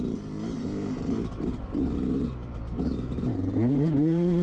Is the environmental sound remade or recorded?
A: remade